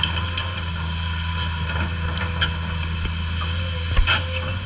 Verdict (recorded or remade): recorded